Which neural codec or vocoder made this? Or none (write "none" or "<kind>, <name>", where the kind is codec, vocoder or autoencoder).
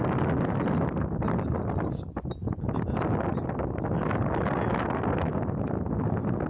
none